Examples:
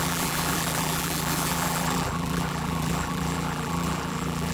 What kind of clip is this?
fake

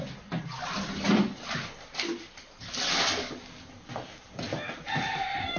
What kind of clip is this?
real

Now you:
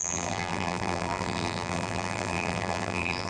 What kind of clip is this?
fake